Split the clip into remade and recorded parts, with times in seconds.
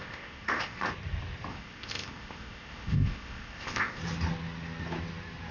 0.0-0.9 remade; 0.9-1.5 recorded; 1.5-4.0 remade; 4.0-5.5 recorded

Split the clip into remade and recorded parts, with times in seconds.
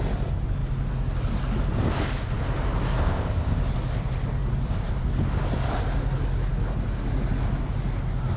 0.0-3.0 recorded; 3.0-3.6 remade; 3.6-8.4 recorded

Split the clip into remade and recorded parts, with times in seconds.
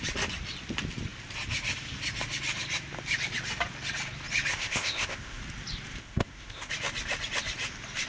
0.0-4.5 recorded; 4.5-5.4 remade; 5.4-6.0 recorded; 6.0-6.7 remade; 6.7-8.1 recorded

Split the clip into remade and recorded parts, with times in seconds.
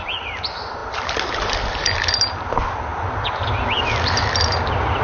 0.0-5.0 recorded